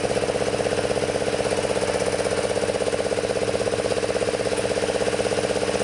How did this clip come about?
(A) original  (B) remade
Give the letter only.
A